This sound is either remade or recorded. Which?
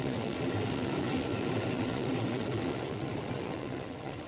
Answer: remade